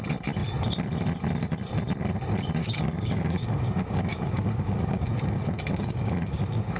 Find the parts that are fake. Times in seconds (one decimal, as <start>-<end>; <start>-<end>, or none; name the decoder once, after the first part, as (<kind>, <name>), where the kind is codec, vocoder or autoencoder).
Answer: 2.6-6.8 (codec, DAC)